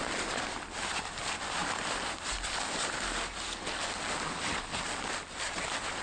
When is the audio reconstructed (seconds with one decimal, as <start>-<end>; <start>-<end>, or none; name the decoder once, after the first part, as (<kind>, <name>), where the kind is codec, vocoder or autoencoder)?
none